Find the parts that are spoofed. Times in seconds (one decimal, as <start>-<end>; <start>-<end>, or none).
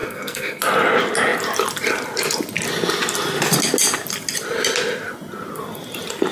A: 0.0-0.6